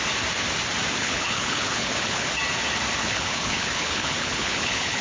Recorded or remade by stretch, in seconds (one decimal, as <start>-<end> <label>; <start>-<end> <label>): 0.0-1.0 recorded; 1.0-2.3 remade; 2.3-3.0 recorded; 3.0-5.0 remade